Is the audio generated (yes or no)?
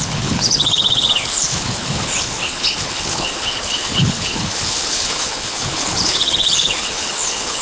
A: yes